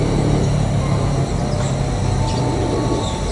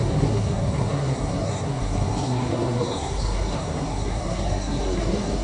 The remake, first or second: second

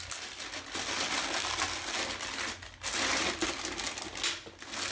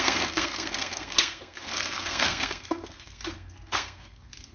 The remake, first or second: second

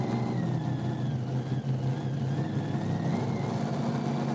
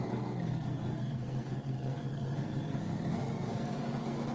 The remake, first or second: second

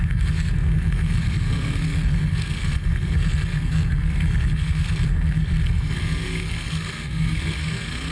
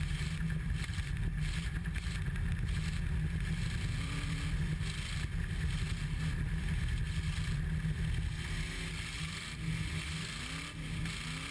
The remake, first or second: first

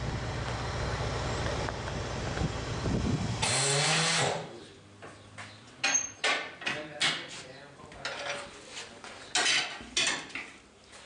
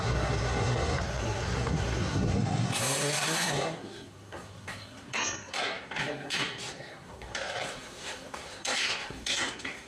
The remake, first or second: second